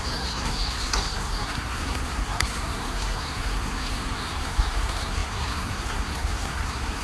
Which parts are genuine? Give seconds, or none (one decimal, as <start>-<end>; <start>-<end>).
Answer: none

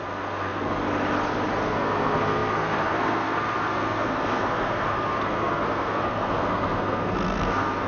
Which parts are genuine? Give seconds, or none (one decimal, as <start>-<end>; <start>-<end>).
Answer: 0.8-1.6

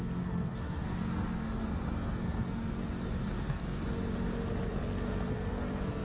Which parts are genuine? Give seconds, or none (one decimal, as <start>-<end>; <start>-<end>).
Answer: 2.8-3.4; 3.8-4.7

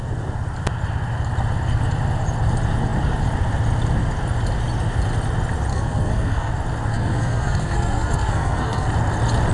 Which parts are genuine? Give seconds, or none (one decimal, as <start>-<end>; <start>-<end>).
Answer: 0.0-5.7; 6.5-6.9; 8.9-9.5

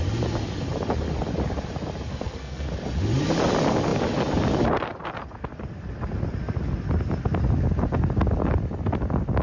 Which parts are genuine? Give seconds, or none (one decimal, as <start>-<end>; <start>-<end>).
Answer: 0.0-2.1; 2.7-9.4

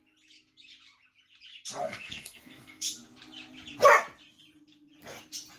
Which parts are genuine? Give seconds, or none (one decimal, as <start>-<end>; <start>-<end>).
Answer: 0.0-1.8; 2.9-5.6

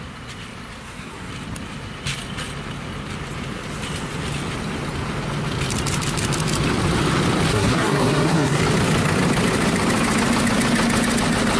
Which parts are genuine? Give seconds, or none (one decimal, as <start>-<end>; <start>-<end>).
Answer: 0.0-0.8; 1.3-7.5; 8.6-11.6